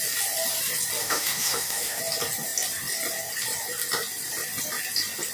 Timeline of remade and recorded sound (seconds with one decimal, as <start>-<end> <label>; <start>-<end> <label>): 0.0-1.0 recorded; 1.0-2.0 remade; 2.0-5.3 recorded

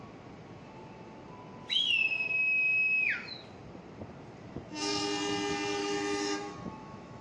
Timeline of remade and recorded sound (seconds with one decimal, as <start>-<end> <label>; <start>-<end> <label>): 0.0-5.8 recorded; 5.8-7.2 remade